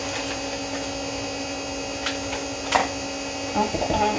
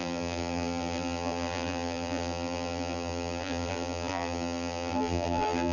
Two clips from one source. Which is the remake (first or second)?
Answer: second